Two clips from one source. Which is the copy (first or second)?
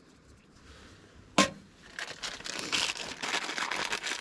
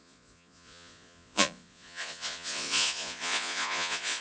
second